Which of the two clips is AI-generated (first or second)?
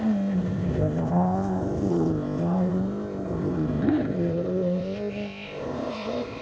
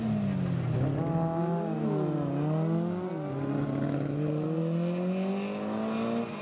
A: first